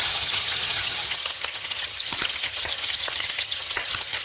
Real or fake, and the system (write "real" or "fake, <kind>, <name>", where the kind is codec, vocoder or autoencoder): fake, vocoder, HiFi-GAN